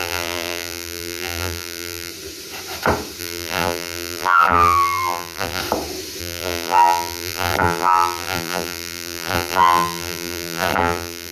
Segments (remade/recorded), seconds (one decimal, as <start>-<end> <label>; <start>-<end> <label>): 0.0-2.1 remade; 2.1-3.2 recorded; 3.2-5.6 remade; 5.6-6.2 recorded; 6.2-11.3 remade